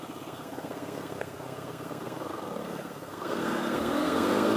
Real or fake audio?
fake